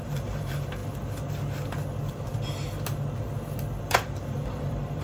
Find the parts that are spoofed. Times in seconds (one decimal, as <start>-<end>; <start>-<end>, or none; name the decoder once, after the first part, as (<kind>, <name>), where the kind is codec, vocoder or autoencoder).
0.0-0.8 (vocoder, BigVGAN v2); 3.8-5.0